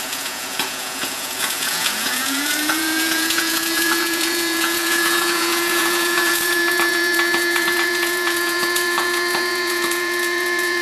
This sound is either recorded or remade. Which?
remade